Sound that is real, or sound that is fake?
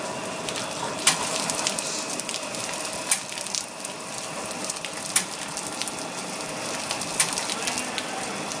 real